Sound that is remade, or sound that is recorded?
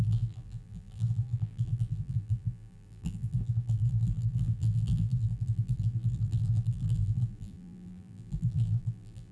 remade